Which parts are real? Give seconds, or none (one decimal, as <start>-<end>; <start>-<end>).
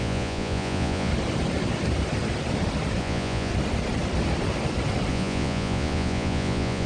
1.1-3.0; 3.5-5.1